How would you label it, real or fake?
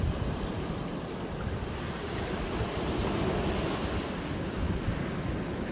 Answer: real